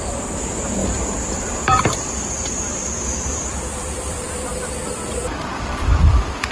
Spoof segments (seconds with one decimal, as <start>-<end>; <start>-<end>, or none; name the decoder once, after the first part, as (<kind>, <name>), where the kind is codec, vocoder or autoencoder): 0.8-4.2 (vocoder, BigVGAN v2); 5.5-6.5